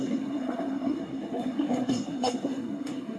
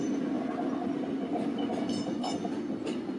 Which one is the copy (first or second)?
first